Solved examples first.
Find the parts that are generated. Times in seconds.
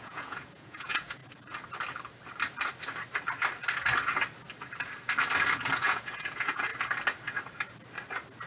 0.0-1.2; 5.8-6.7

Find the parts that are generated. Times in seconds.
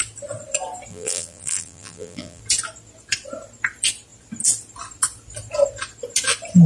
0.9-2.4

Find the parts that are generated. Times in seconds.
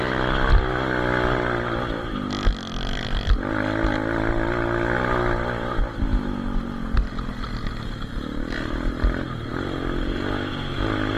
none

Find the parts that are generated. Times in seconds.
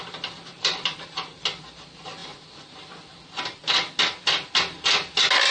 0.5-1.4